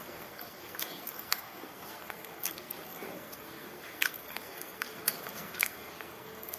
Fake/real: fake